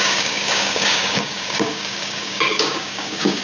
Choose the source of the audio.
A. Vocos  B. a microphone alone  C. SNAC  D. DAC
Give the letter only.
D